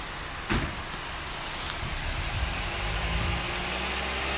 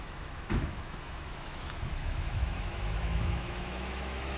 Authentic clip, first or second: first